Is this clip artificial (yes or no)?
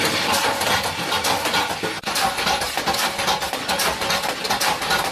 no